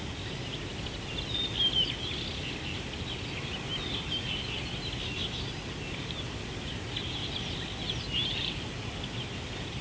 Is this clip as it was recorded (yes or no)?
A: yes